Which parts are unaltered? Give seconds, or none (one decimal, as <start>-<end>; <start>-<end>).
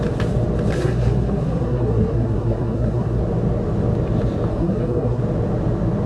0.0-0.7; 3.2-4.5; 5.2-6.1